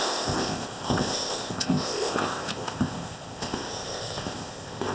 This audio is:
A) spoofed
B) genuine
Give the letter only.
A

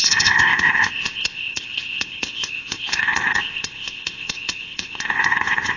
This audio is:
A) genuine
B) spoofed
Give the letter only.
B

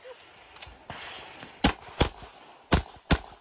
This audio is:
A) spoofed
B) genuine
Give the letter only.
B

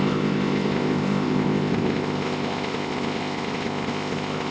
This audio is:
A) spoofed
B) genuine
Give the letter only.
A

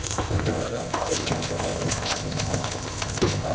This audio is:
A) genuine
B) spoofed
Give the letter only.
B